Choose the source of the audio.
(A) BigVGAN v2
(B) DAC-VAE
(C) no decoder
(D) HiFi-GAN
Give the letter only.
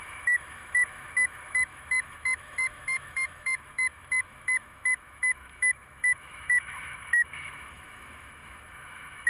B